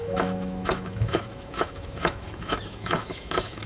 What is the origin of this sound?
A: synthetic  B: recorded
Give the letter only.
A